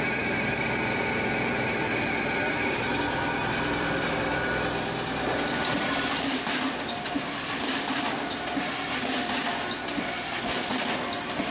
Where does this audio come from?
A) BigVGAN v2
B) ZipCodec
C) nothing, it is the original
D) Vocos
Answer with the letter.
A